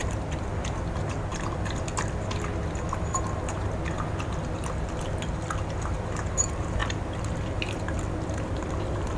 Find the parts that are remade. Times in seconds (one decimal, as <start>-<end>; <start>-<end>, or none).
none

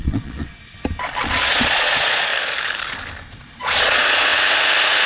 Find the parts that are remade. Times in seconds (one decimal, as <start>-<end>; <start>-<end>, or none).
0.0-0.6; 1.3-2.3; 3.3-4.3

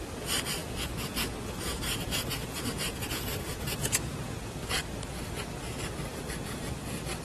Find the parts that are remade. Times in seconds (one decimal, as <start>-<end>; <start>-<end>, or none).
0.6-4.7

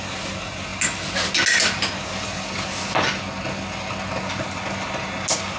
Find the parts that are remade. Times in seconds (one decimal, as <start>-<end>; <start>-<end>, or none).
none

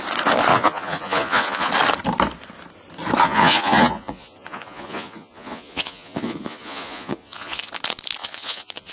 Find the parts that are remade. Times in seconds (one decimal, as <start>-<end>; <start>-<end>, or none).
0.5-1.7; 3.2-7.7; 8.2-8.9

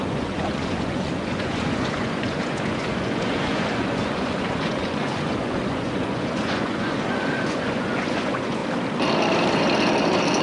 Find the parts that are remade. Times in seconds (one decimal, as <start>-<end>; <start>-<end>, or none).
0.0-8.6

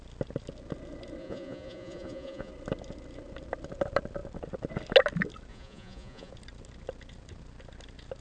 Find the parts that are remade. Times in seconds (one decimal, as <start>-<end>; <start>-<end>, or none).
1.2-2.5; 5.5-6.3

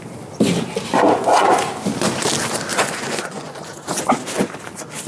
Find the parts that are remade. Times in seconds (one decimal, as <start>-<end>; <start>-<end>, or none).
0.9-1.6; 2.7-3.7